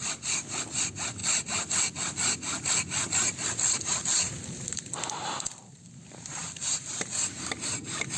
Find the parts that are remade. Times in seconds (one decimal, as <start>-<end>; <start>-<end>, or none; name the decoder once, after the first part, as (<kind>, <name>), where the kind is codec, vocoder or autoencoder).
none